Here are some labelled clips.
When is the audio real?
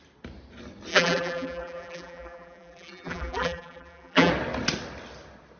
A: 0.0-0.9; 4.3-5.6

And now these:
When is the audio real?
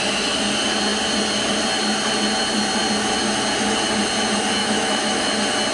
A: 0.0-4.6; 5.3-5.7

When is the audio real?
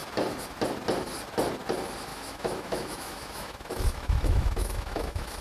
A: 0.0-2.1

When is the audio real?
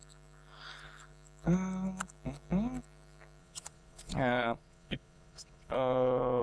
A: 0.0-3.4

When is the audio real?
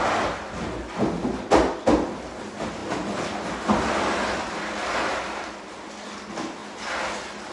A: 0.0-7.5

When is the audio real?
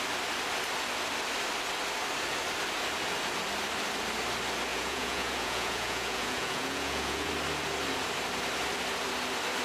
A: 0.0-4.7; 7.3-9.6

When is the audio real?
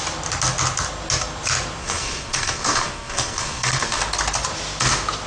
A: 0.0-1.8; 4.0-5.3